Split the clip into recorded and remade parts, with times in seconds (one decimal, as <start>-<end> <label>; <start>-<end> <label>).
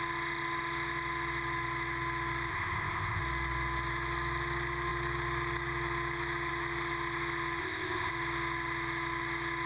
0.0-2.5 recorded; 2.5-3.2 remade; 3.2-7.6 recorded; 7.6-8.1 remade; 8.1-9.7 recorded